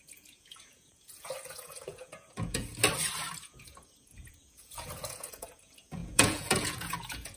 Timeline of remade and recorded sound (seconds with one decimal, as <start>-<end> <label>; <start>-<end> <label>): 0.0-2.7 remade; 2.7-3.4 recorded; 3.4-7.4 remade